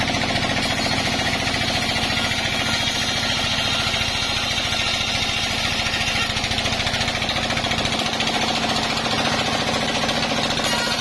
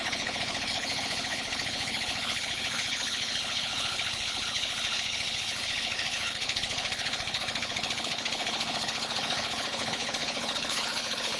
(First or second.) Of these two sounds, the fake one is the second